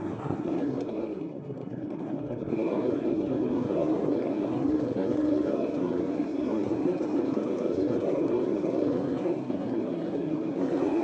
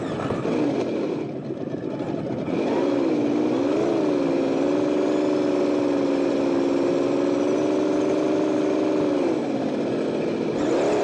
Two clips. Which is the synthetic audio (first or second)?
first